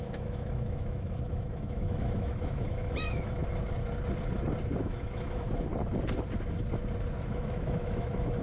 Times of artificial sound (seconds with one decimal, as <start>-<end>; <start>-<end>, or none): 0.0-3.4; 4.8-5.7; 7.2-8.4